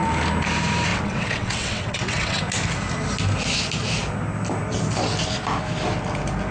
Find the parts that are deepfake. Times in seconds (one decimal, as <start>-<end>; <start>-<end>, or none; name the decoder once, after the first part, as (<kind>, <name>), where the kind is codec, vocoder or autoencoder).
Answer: 0.9-2.4 (vocoder, WaveNeXt)